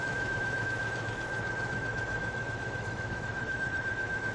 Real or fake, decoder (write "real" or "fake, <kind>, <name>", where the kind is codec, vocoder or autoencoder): fake, autoencoder, DAC-VAE